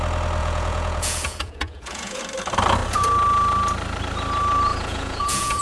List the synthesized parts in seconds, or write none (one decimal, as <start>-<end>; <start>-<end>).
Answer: 0.4-2.2; 4.7-5.6